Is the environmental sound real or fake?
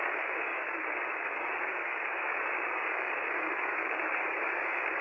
fake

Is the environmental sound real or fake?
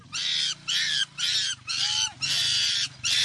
real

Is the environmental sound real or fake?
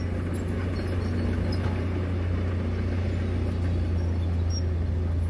real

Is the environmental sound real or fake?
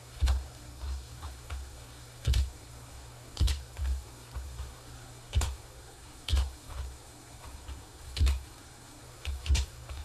fake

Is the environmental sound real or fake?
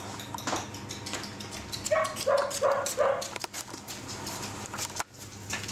real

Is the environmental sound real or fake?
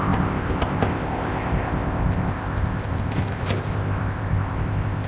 fake